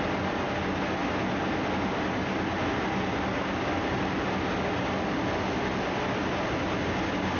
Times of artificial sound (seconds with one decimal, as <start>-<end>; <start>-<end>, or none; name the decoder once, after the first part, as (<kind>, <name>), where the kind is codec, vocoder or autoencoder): none